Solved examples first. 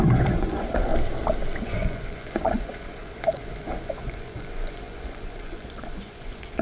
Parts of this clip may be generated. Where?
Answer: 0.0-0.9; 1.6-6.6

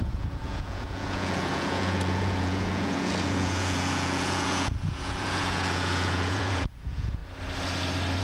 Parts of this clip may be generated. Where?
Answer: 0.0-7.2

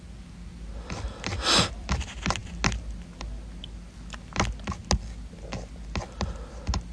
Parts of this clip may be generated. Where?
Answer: 0.5-1.9